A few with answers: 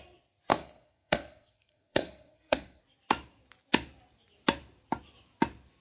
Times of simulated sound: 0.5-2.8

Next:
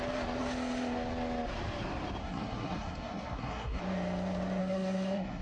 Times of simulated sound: 2.2-3.8; 4.6-5.4

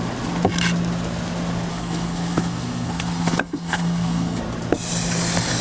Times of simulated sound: 1.7-4.4